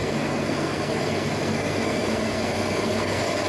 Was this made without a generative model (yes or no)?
no